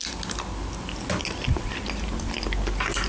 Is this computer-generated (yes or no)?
no